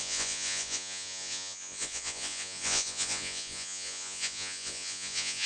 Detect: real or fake fake